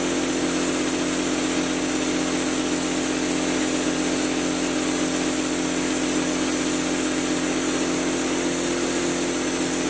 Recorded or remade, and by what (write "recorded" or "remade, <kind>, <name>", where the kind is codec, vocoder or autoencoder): recorded